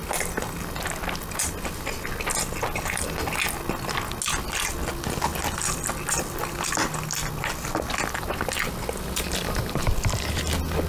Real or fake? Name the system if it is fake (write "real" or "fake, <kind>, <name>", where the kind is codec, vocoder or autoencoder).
real